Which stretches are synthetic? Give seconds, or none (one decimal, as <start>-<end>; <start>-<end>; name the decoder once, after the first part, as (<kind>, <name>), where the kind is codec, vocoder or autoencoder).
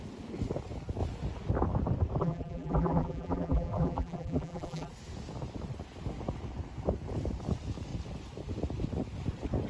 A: 2.2-4.9 (vocoder, BigVGAN v2)